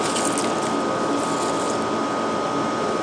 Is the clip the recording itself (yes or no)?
yes